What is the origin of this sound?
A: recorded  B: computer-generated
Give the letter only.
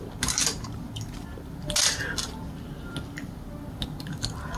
A